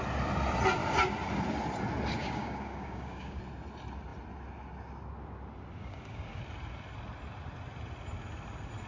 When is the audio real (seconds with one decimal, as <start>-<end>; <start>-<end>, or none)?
0.0-2.2; 3.4-5.8; 6.4-8.9